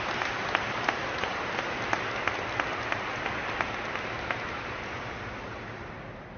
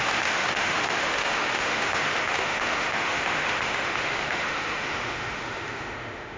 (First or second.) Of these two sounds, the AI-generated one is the second